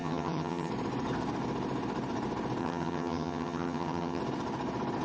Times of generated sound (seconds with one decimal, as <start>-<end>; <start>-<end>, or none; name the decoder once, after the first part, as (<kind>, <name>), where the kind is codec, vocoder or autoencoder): 0.0-0.7 (vocoder, HiFi-GAN); 2.6-4.2